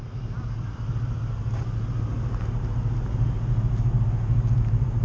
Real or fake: real